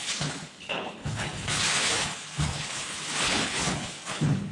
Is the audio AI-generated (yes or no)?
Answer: yes